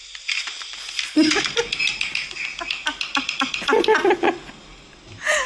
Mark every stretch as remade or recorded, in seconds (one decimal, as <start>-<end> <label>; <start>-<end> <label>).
0.0-5.5 recorded